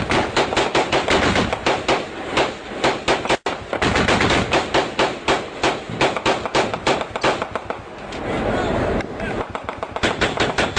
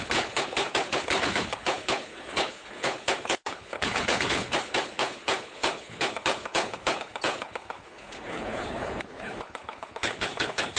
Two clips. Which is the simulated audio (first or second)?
second